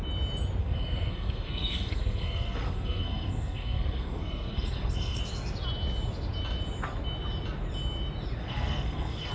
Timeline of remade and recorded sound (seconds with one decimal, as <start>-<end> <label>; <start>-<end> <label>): 0.0-0.6 recorded; 0.6-5.2 remade; 5.2-8.4 recorded; 8.4-9.3 remade